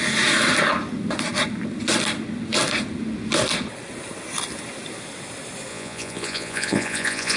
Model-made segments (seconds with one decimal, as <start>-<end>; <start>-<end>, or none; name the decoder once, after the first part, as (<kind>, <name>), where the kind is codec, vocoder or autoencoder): 5.7-7.4 (vocoder, Vocos)